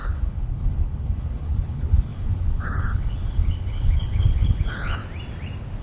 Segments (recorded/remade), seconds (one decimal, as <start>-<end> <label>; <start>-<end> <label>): 0.0-5.0 remade; 5.0-5.8 recorded